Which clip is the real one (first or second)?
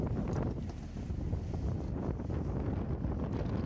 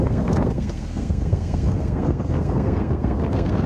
first